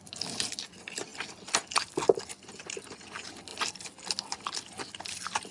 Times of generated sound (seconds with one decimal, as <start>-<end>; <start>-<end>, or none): none